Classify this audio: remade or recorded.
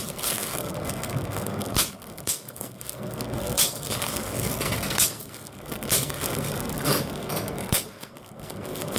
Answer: remade